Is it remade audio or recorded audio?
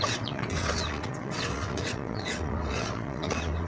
remade